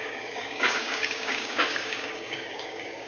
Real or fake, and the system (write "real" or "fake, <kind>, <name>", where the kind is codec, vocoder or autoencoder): fake, codec, DAC